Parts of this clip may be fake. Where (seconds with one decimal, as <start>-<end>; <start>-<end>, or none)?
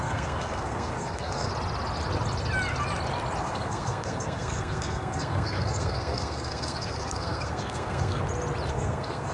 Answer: 0.0-1.5; 3.4-8.2; 8.7-9.3